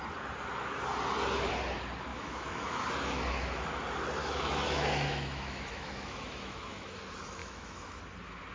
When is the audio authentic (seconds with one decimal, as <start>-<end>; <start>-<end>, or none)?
0.0-2.1; 2.8-4.2; 7.0-7.4; 8.0-8.5